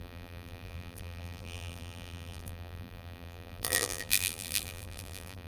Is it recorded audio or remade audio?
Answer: remade